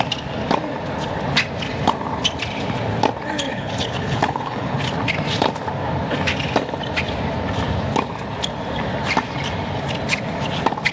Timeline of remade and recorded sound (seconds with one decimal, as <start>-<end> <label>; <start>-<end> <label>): 0.0-3.5 recorded; 3.5-4.8 remade; 4.8-10.9 recorded